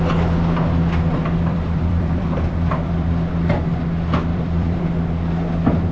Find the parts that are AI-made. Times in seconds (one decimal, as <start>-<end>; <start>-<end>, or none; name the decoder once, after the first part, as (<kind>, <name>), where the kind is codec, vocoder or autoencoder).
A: 1.2-3.3 (vocoder, BigVGAN v2); 4.3-4.8